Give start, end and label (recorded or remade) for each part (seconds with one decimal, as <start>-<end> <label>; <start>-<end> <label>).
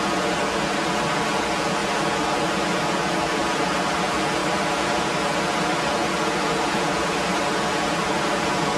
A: 0.0-4.4 recorded; 4.4-5.2 remade; 5.2-8.8 recorded